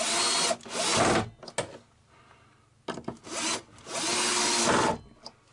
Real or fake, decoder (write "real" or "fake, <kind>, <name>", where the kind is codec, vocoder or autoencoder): real